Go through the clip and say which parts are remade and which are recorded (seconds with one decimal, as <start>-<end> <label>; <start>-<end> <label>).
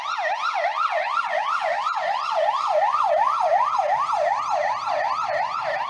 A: 0.0-0.5 recorded; 0.5-3.8 remade; 3.8-5.9 recorded